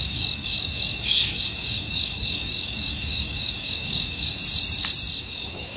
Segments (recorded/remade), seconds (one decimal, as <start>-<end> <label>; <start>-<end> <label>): 0.0-4.4 remade; 4.4-5.2 recorded; 5.2-5.8 remade